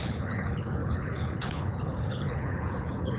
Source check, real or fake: fake